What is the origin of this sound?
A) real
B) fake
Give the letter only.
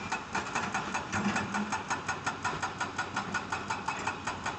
A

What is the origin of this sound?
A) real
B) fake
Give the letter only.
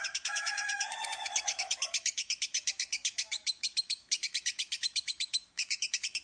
B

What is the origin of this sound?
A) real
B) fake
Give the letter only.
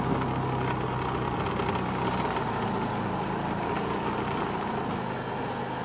A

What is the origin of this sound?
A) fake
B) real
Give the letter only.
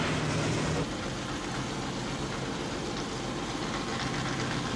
B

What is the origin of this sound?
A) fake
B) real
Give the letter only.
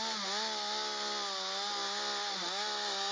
B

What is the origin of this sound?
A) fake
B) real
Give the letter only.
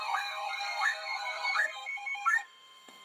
A